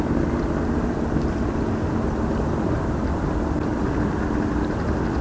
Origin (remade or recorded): recorded